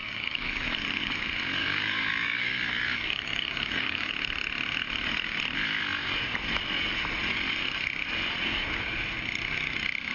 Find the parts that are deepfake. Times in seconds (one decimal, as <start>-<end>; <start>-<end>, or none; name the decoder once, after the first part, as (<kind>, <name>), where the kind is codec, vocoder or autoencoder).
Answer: 0.0-1.1 (codec, DAC); 1.6-4.1

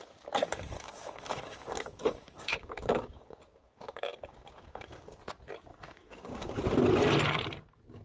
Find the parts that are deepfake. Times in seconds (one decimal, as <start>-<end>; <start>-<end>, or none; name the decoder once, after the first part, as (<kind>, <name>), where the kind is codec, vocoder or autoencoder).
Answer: 0.4-5.2 (codec, DAC); 5.7-6.6

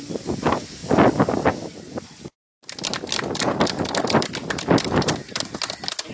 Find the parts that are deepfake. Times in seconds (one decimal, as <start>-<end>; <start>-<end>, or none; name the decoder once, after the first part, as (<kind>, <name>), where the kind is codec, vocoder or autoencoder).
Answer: none